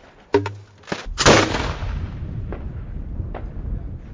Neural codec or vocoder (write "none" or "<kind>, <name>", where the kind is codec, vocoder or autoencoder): none